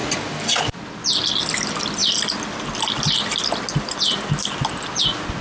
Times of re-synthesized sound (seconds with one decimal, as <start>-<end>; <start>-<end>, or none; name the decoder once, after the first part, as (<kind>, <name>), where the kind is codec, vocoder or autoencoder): none